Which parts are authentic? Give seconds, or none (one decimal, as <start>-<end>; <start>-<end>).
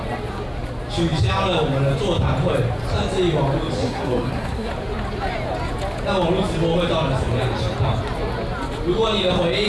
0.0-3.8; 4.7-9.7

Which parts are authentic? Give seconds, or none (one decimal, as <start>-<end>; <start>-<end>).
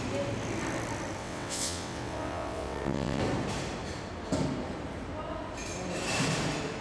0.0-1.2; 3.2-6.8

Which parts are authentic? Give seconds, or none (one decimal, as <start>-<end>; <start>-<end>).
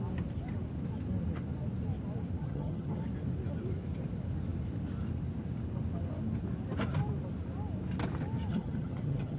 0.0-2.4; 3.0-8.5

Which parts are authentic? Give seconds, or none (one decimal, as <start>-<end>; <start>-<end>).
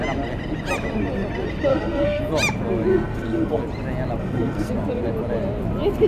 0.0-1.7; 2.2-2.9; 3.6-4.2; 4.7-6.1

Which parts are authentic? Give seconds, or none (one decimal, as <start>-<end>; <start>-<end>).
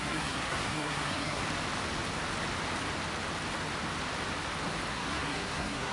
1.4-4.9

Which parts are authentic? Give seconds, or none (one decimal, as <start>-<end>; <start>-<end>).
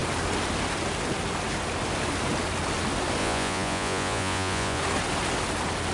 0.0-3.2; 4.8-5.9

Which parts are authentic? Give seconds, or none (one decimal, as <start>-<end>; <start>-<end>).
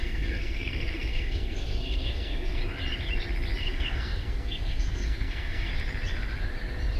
2.6-3.6; 5.7-7.0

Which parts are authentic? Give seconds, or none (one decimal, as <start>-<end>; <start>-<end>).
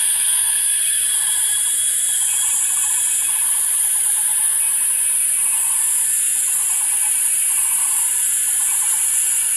0.8-9.6